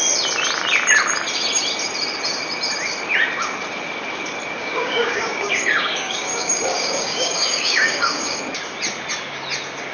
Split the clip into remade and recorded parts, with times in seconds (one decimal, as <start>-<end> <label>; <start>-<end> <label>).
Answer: 0.0-4.6 recorded; 4.6-8.4 remade; 8.4-9.9 recorded